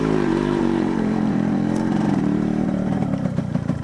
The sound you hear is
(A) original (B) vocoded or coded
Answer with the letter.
B